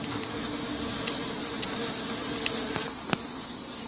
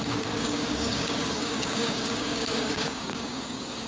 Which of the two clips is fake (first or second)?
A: second